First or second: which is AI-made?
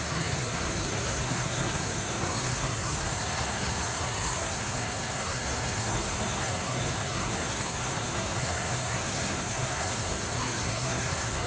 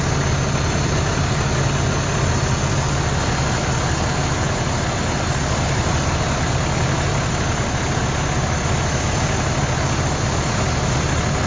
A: first